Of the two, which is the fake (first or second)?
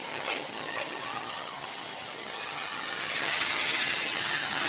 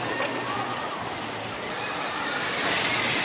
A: first